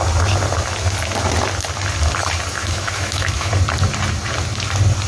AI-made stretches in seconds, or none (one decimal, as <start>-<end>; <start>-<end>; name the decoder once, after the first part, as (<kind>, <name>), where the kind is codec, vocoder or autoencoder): 2.6-3.5 (autoencoder, DAC-VAE)